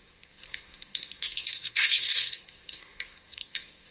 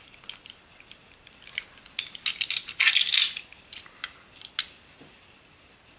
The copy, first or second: first